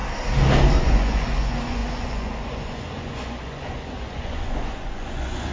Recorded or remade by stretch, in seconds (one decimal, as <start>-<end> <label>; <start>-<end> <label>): 0.0-0.8 recorded; 0.8-5.5 remade